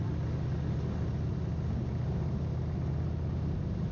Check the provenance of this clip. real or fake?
real